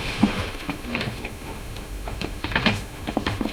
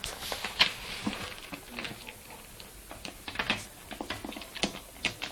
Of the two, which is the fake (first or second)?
first